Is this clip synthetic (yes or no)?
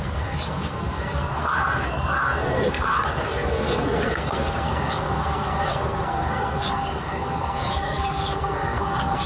yes